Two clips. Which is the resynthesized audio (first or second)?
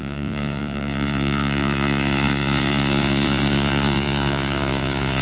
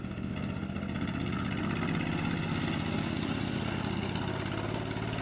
first